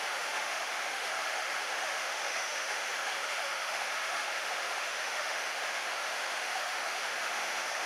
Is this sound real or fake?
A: fake